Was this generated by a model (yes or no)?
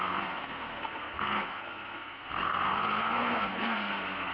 yes